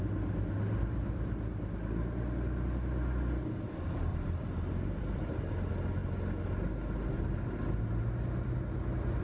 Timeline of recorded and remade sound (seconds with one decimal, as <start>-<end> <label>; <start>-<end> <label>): 0.0-4.1 recorded; 4.1-5.5 remade; 5.5-9.2 recorded

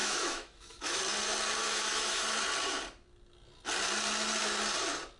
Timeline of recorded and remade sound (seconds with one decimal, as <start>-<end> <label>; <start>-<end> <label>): 0.0-1.0 remade; 1.0-1.6 recorded; 1.6-2.3 remade; 2.3-5.2 recorded

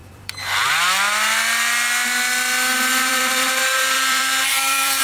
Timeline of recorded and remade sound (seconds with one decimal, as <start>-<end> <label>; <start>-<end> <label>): 0.0-0.7 remade; 0.7-2.7 recorded; 2.7-5.0 remade